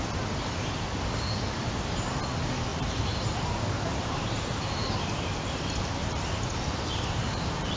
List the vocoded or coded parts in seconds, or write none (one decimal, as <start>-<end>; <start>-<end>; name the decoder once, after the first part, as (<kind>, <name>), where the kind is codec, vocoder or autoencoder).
2.7-7.8 (vocoder, BigVGAN v2)